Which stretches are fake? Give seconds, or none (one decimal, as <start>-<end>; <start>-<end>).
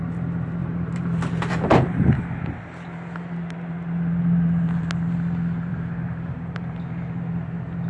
0.6-2.0; 5.7-6.8